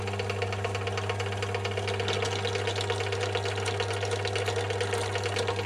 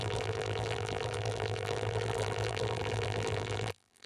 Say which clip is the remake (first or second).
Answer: second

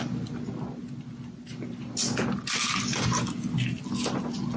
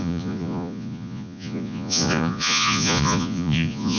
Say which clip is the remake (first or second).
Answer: second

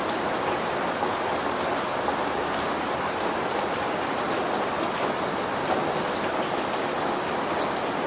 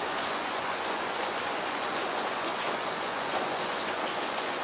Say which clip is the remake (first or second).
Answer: second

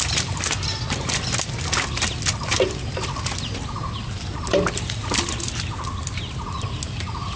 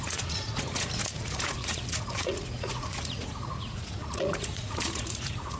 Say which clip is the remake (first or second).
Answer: second